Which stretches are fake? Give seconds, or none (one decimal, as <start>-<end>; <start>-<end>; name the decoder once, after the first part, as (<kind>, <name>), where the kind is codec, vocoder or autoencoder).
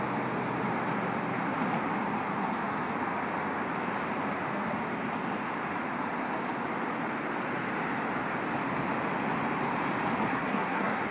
10.2-11.1 (codec, SNAC)